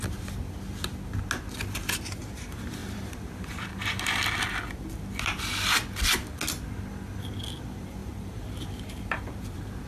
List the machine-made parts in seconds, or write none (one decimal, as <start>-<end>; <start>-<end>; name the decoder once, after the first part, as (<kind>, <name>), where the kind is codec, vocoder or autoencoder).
2.8-4.2 (vocoder, BigVGAN v2); 8.0-9.9